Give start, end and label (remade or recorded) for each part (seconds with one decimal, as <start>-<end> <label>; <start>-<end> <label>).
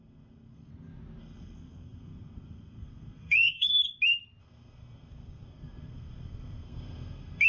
0.0-0.7 remade; 0.7-1.2 recorded; 1.2-3.7 remade; 3.7-4.4 recorded; 4.4-7.5 remade